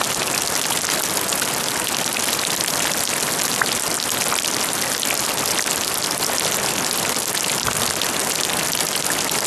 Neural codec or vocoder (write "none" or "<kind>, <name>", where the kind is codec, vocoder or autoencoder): none